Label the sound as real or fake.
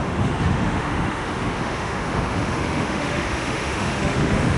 fake